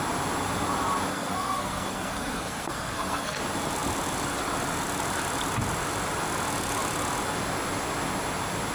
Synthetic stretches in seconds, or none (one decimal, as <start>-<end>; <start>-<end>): 1.1-3.4